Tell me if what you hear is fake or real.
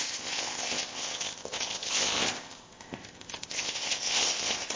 fake